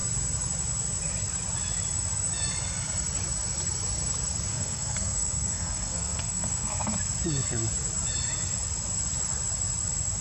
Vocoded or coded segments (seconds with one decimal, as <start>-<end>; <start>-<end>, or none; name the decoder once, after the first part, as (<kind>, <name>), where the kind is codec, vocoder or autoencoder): 4.5-6.8 (codec, SNAC)